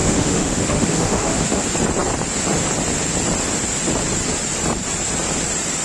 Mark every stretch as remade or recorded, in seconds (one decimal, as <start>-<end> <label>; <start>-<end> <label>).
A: 0.0-1.6 remade; 1.6-5.8 recorded